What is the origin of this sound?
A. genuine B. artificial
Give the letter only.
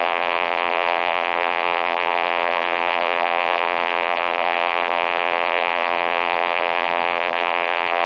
B